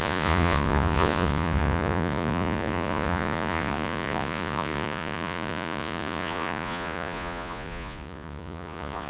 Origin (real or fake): fake